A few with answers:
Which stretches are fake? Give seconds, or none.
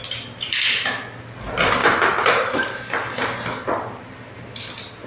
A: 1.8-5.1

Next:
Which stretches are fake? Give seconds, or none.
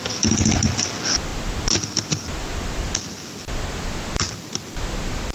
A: none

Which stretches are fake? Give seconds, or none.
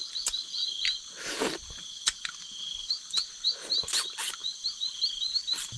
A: 4.4-5.8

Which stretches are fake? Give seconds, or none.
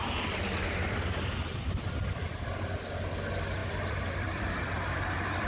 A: 0.0-5.5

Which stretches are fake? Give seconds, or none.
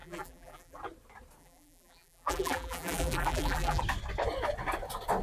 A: 0.0-0.8; 1.4-3.8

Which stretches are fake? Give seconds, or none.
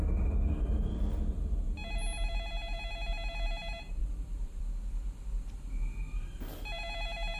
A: 4.0-4.6